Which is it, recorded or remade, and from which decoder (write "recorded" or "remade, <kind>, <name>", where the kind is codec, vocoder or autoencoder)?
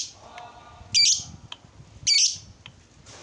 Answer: recorded